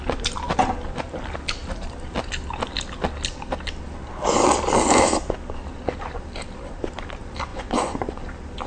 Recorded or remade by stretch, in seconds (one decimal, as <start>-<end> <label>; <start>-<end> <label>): 0.0-7.5 recorded; 7.5-8.2 remade; 8.2-8.7 recorded